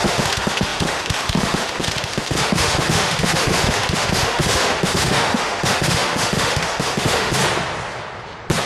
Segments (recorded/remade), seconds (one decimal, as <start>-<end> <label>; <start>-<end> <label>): 0.0-7.4 remade; 7.4-8.7 recorded